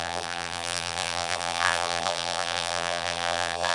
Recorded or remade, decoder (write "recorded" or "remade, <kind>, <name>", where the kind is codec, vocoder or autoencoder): remade, vocoder, BigVGAN v2